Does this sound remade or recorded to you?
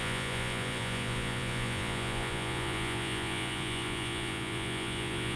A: remade